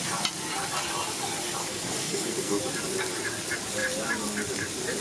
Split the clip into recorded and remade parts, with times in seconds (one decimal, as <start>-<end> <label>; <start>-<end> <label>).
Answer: 0.0-1.6 recorded; 1.6-2.6 remade; 2.6-5.0 recorded